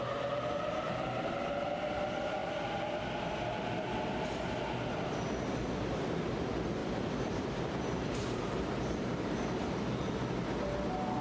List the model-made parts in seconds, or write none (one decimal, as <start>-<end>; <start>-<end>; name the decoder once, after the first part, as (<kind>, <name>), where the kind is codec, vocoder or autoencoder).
6.8-9.8 (vocoder, BigVGAN v2)